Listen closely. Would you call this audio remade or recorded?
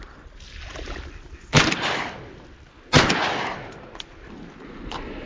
recorded